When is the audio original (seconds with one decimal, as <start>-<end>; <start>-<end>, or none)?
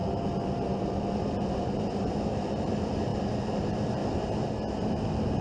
0.0-1.1; 4.0-5.4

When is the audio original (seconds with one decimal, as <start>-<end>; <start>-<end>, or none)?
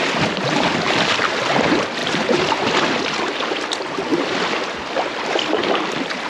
0.0-2.0; 3.2-4.1; 4.8-6.3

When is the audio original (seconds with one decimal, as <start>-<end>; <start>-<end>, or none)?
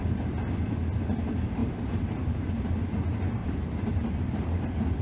0.0-1.6; 2.5-3.4; 4.6-5.0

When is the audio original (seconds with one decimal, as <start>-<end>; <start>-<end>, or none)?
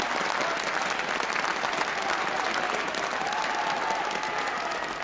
0.0-5.0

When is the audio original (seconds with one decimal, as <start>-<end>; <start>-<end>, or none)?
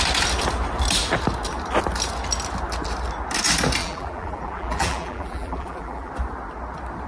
0.0-3.8; 6.1-7.1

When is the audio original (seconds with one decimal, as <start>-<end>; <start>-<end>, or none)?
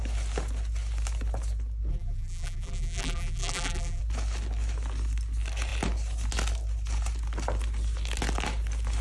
0.0-1.9; 4.0-9.0